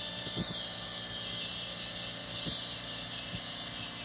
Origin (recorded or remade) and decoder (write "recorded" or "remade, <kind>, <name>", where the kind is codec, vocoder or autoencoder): recorded